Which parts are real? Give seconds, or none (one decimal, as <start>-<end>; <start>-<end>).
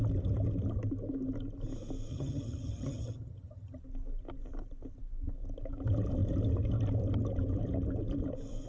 0.0-2.1; 3.8-8.7